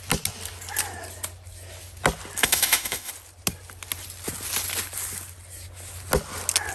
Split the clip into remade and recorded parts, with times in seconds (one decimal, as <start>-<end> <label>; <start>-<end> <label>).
0.0-2.4 recorded; 2.4-3.1 remade; 3.1-6.7 recorded